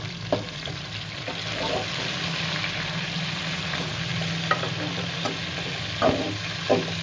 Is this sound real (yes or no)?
yes